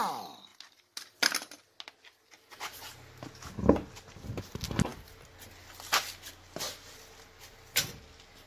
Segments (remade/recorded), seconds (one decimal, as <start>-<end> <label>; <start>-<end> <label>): 0.0-8.5 recorded